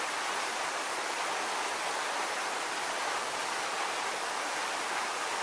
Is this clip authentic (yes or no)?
yes